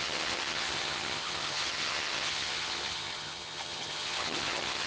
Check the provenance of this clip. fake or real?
fake